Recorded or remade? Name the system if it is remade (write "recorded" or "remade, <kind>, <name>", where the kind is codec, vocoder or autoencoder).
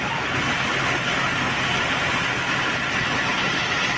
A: recorded